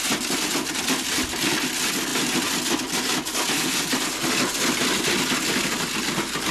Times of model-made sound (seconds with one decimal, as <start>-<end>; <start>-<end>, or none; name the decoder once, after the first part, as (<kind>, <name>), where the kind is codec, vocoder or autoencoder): none